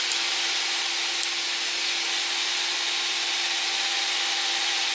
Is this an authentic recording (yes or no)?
yes